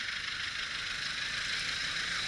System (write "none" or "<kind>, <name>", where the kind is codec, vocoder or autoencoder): none